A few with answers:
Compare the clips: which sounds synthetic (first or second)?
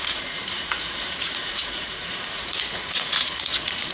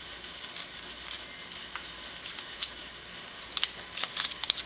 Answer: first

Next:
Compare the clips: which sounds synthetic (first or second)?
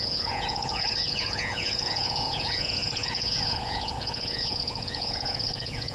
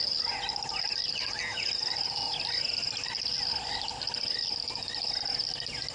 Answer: first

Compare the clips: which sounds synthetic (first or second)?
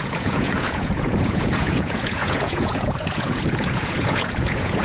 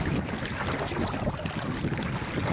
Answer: first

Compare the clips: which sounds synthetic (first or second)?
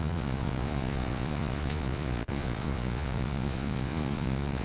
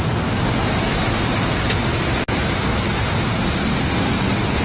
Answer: first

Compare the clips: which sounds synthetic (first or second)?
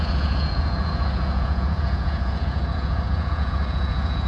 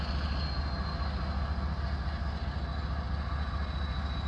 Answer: first